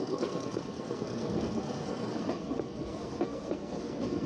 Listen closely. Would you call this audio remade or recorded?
remade